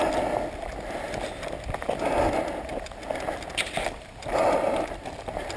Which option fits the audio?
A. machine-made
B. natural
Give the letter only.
B